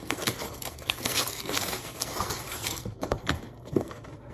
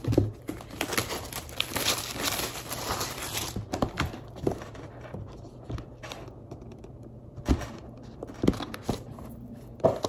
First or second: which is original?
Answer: second